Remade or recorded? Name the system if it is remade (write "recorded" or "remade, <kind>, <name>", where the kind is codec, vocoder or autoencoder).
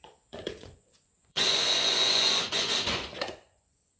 remade, vocoder, Vocos